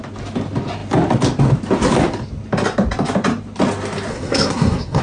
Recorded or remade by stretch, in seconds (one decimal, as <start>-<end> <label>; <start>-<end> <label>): 0.0-4.1 recorded; 4.1-5.0 remade